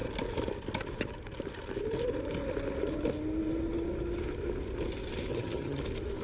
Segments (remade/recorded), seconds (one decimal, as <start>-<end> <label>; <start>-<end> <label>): 0.0-5.3 recorded; 5.3-5.8 remade; 5.8-6.2 recorded